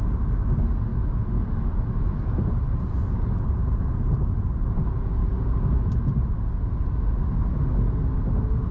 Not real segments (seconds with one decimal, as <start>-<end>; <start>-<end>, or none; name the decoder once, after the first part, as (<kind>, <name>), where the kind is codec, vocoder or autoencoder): 0.9-2.5 (autoencoder, DAC-VAE)